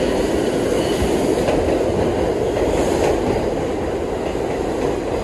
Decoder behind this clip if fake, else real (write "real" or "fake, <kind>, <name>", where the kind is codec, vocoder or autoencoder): real